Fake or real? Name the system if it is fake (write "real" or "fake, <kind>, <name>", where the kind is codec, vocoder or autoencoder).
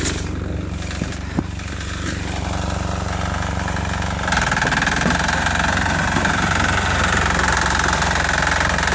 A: real